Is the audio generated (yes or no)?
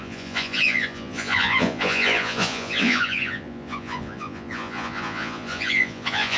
yes